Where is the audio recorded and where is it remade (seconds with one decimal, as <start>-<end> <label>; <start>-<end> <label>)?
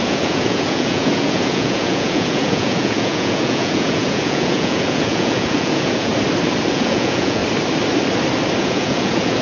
0.0-6.1 remade; 6.1-6.7 recorded; 6.7-7.4 remade; 7.4-8.6 recorded; 8.6-9.4 remade